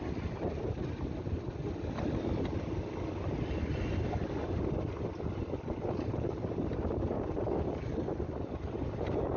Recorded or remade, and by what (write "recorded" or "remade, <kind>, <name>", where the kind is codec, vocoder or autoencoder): recorded